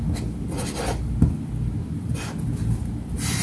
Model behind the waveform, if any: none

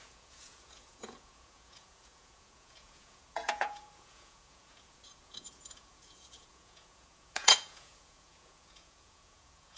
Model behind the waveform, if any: vocoder, Vocos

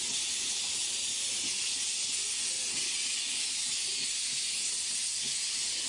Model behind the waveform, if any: none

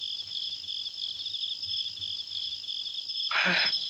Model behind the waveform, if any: none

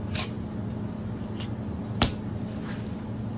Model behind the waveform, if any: none